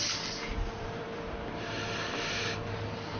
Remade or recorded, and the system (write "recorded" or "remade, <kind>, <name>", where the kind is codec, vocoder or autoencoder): remade, vocoder, BigVGAN v2